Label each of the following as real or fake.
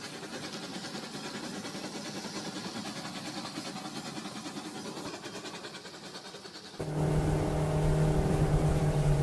real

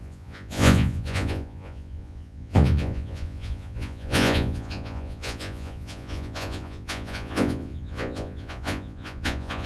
fake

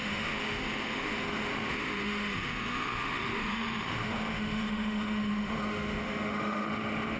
fake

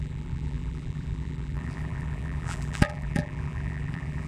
fake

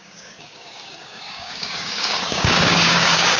fake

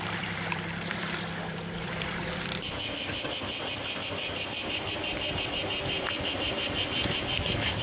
fake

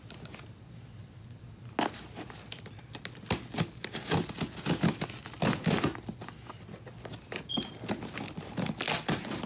real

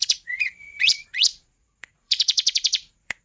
fake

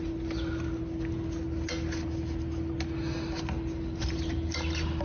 real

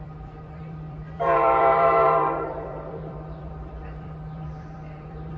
fake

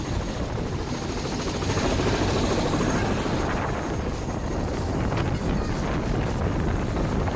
real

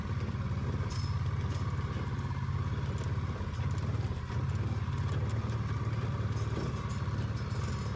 real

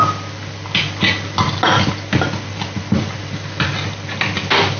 real